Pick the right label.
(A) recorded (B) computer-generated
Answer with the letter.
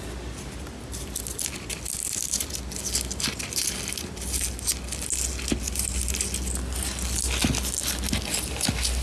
A